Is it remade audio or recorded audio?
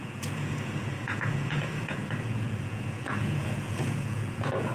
remade